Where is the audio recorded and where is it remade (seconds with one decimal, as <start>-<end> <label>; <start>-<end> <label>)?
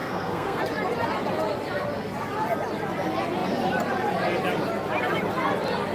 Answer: 0.0-0.6 remade; 0.6-5.9 recorded